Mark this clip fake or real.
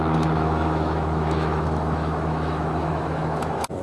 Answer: fake